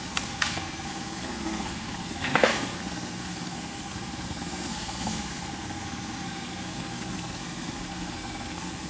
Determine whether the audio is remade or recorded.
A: remade